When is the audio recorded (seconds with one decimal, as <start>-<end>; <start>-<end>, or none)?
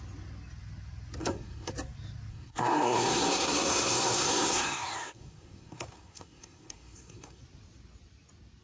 0.0-1.2; 1.7-2.3; 7.4-8.6